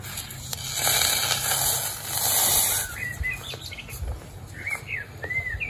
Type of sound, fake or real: real